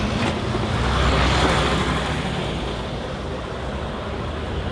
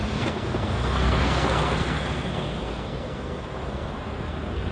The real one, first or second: first